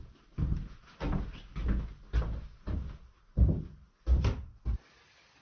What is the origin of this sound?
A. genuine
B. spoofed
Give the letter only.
A